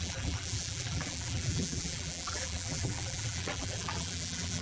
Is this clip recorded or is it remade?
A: remade